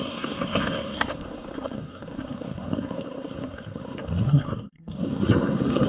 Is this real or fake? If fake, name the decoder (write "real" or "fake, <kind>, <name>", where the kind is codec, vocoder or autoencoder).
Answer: fake, codec, SNAC